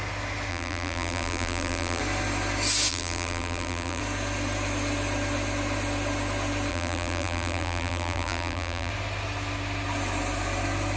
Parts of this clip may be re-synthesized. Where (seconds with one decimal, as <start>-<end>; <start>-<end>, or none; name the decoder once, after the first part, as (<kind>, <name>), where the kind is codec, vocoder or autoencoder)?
0.5-2.0 (vocoder, BigVGAN v2); 2.9-4.0; 6.7-8.9